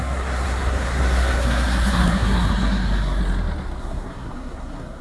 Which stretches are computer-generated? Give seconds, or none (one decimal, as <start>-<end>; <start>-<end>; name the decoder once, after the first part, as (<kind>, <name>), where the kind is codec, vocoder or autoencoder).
0.0-3.2 (codec, SNAC); 3.8-5.0